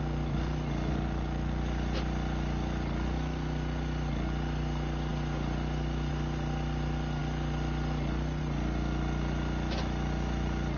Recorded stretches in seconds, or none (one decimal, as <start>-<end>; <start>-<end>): 0.0-10.8